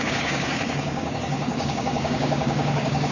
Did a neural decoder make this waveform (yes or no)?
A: yes